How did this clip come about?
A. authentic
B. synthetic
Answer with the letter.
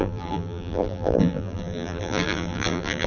B